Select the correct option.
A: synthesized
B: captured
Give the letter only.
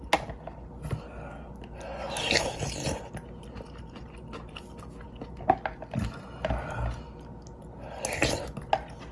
B